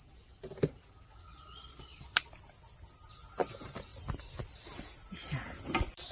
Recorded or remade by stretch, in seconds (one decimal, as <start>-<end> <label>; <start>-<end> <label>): 0.0-1.2 recorded; 1.2-2.3 remade; 2.3-6.1 recorded